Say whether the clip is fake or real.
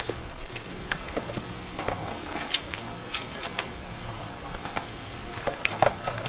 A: fake